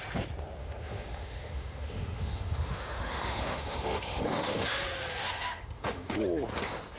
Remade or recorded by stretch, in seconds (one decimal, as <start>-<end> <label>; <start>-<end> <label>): 0.0-0.6 recorded; 0.6-4.8 remade; 4.8-5.2 recorded; 5.2-6.2 remade; 6.2-7.0 recorded